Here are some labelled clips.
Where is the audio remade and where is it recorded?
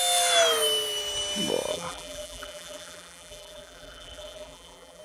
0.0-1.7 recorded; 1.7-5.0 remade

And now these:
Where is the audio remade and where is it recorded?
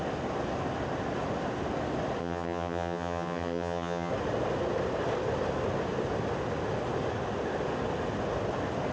0.0-2.2 recorded; 2.2-4.1 remade; 4.1-8.9 recorded